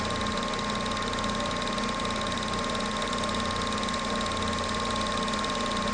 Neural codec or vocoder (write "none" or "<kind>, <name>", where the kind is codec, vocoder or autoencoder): none